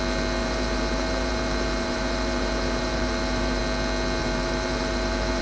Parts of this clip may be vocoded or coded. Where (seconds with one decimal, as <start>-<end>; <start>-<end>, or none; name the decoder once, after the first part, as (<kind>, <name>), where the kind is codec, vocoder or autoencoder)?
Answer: 0.4-3.6 (vocoder, BigVGAN v2); 4.2-5.4